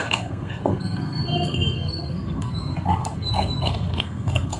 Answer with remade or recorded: remade